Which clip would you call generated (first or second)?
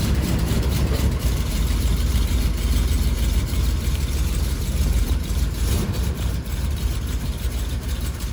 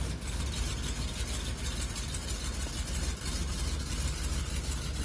first